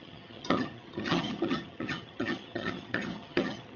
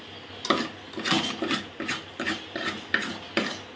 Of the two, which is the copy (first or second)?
first